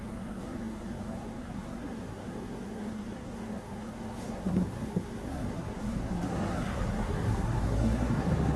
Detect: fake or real fake